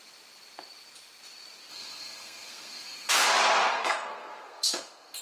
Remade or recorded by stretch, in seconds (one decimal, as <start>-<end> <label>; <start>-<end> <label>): 0.0-1.7 recorded; 1.7-3.1 remade; 3.1-3.7 recorded; 3.7-5.2 remade